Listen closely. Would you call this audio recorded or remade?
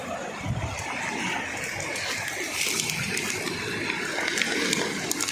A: recorded